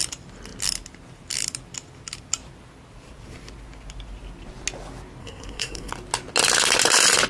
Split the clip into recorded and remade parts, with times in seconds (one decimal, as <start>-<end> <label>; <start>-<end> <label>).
0.0-5.2 recorded; 5.2-5.9 remade; 5.9-7.3 recorded